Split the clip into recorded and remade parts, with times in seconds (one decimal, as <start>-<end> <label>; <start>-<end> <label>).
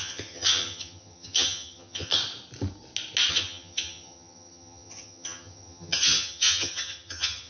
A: 0.0-2.2 remade; 2.2-3.3 recorded; 3.3-7.5 remade